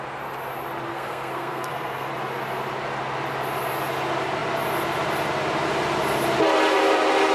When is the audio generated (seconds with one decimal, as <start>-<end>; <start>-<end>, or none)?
0.9-2.1